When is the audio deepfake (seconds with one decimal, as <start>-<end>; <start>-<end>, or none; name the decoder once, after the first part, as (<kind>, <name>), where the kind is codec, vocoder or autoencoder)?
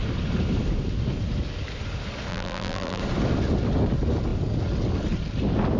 2.3-3.0 (vocoder, BigVGAN v2)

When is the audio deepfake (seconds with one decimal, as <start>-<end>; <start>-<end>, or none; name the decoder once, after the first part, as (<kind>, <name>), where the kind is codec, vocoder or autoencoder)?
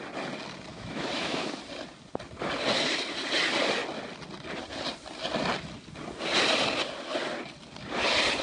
0.7-1.6 (autoencoder, DAC-VAE)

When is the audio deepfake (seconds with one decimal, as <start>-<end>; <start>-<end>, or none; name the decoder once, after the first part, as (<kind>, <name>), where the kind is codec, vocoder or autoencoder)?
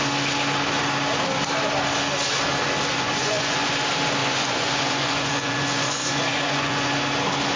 2.9-3.7 (vocoder, Vocos); 4.2-6.9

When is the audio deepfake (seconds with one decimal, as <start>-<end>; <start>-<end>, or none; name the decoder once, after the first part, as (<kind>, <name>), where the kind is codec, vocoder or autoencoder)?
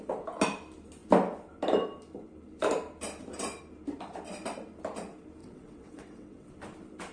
5.4-6.5 (vocoder, WaveNeXt)